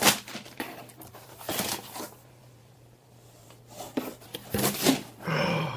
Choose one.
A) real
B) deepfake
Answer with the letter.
B